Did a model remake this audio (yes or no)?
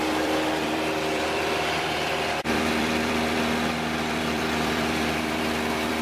yes